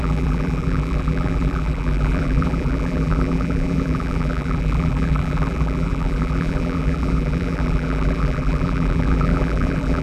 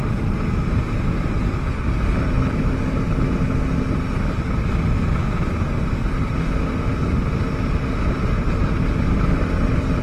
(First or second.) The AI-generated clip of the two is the first